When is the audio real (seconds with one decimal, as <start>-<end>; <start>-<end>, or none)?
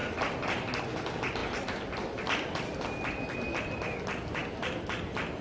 0.0-5.4